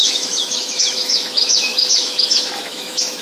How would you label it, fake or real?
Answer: fake